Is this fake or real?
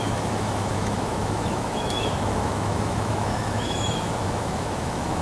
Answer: fake